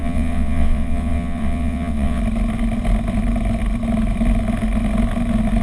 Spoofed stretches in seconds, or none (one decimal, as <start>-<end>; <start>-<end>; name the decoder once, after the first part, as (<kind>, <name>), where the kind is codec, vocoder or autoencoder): 0.0-2.2 (vocoder, WaveNeXt)